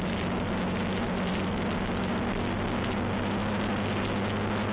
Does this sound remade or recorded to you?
recorded